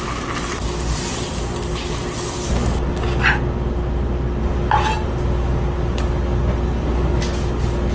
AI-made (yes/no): no